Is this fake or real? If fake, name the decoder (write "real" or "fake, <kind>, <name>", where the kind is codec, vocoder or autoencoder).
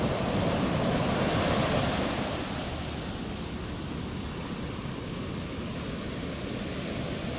real